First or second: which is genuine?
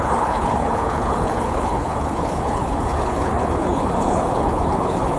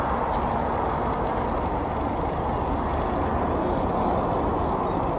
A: second